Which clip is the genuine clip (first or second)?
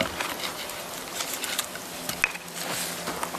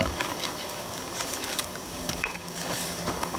first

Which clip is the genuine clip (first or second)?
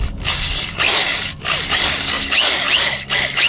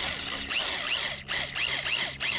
second